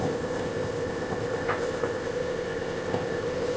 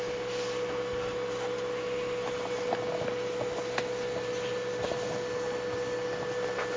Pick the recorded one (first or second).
second